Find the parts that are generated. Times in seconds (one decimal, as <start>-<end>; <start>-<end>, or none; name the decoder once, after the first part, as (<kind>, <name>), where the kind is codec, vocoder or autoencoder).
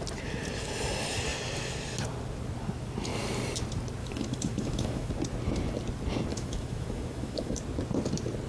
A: 4.0-5.1 (autoencoder, DAC-VAE); 6.3-7.6